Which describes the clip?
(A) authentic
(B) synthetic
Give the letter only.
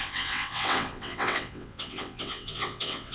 B